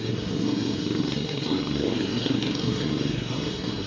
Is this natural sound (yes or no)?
no